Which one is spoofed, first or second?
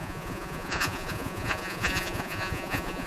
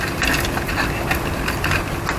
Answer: first